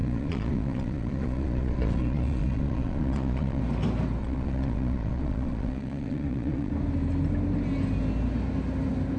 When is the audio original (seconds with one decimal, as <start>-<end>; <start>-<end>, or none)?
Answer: 3.6-4.2; 6.7-9.2